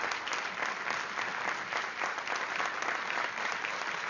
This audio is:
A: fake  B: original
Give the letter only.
B